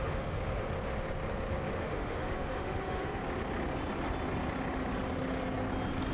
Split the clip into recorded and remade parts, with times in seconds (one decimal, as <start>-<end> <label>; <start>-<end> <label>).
0.0-0.4 remade; 0.4-1.8 recorded; 1.8-3.2 remade; 3.2-6.1 recorded